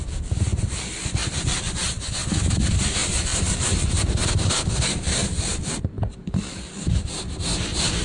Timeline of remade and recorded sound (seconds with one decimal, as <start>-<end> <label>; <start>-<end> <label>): 0.0-1.8 remade; 1.8-3.3 recorded; 3.3-7.2 remade; 7.2-8.0 recorded